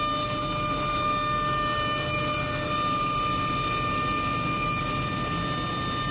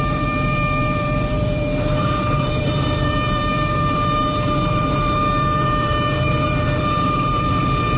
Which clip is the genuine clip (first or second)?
first